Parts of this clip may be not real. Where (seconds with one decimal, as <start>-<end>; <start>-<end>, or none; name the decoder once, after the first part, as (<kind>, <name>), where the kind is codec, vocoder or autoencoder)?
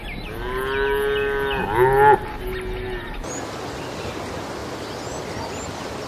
none